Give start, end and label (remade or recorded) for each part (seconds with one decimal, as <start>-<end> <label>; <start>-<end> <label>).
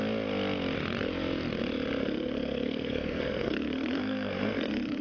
0.0-2.0 recorded; 2.0-5.0 remade